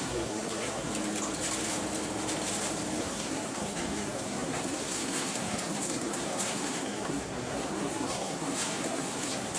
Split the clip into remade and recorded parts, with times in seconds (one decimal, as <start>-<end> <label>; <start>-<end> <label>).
0.0-0.9 remade; 0.9-3.0 recorded; 3.0-9.6 remade

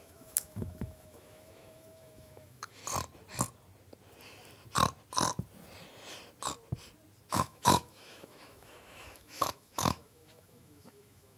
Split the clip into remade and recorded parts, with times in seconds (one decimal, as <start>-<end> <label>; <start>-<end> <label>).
0.0-2.8 remade; 2.8-7.3 recorded; 7.3-11.4 remade

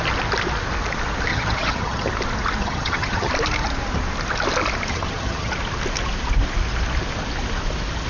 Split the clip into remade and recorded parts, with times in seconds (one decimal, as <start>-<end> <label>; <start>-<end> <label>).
0.0-1.3 recorded; 1.3-2.1 remade; 2.1-2.6 recorded; 2.6-3.3 remade; 3.3-4.9 recorded; 4.9-5.5 remade; 5.5-8.1 recorded

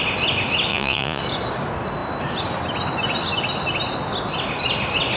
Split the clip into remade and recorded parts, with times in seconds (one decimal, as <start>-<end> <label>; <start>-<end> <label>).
0.0-0.7 recorded; 0.7-1.2 remade; 1.2-5.2 recorded

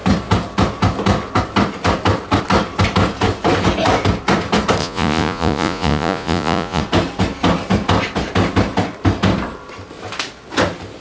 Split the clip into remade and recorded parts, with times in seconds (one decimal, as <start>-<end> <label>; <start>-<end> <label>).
0.0-4.8 recorded; 4.8-6.8 remade; 6.8-11.0 recorded

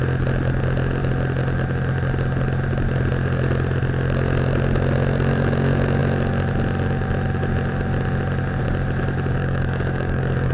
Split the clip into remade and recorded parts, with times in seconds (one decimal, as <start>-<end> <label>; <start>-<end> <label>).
0.0-9.4 recorded; 9.4-10.5 remade

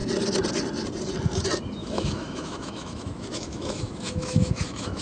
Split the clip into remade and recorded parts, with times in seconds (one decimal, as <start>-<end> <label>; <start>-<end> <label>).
0.0-1.8 recorded; 1.8-5.0 remade